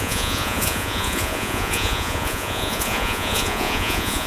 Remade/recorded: remade